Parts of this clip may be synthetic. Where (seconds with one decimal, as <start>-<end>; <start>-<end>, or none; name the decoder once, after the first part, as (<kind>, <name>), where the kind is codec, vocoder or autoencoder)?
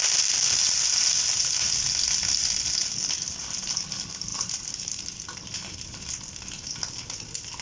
4.3-5.0 (vocoder, BigVGAN v2)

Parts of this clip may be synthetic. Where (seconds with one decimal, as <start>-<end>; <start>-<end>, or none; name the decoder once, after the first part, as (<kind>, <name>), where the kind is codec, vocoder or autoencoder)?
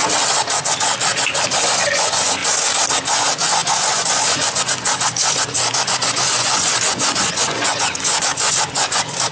1.6-2.4 (vocoder, Vocos); 3.1-9.3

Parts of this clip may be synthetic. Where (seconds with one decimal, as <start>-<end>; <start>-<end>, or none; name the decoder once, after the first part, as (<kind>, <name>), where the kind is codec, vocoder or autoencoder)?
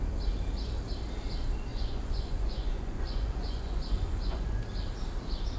1.7-4.6 (vocoder, Vocos)